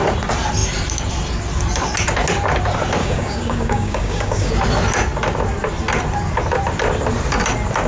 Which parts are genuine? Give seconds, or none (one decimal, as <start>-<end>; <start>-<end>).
0.0-3.0; 4.5-7.9